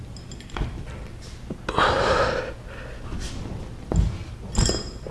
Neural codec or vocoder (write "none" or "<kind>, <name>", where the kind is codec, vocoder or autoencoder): none